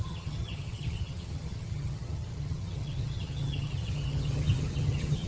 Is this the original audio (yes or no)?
no